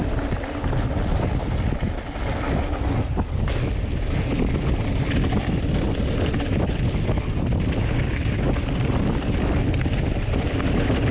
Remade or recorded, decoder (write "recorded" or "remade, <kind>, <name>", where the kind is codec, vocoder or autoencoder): recorded